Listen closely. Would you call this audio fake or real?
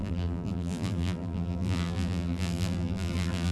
fake